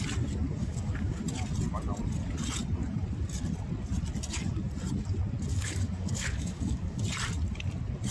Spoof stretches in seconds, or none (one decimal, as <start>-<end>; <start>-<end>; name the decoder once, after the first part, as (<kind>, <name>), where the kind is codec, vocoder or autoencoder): 0.6-1.2 (codec, DAC); 5.5-7.0